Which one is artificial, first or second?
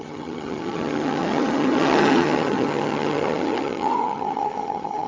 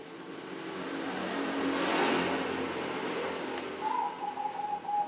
first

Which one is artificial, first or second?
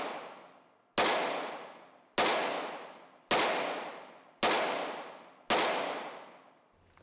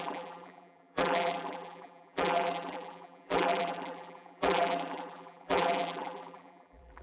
second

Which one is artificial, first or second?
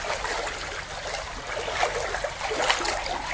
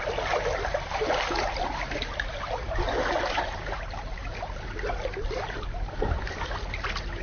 second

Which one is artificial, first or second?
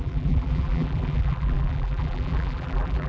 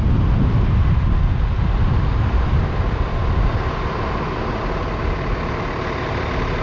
first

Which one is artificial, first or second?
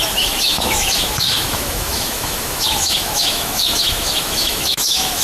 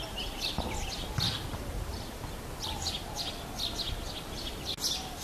first